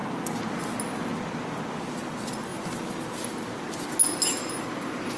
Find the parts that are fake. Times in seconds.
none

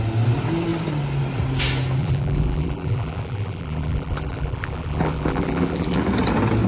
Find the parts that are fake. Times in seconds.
2.0-6.0 (vocoder, BigVGAN v2)

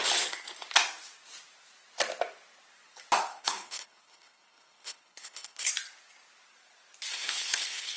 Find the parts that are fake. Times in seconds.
3.3-5.7 (codec, HILCodec); 7.1-8.0

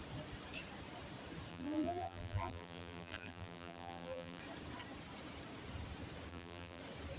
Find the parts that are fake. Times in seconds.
1.5-4.4 (vocoder, BigVGAN v2); 6.3-6.8

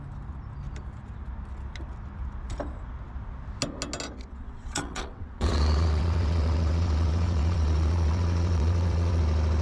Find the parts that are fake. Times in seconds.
4.3-9.2 (vocoder, WaveNeXt)

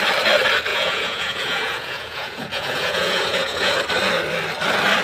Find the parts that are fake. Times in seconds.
0.7-3.7 (vocoder, Vocos)

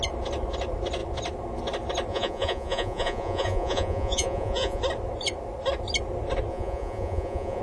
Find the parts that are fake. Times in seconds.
2.1-4.8 (vocoder, Vocos); 6.5-7.6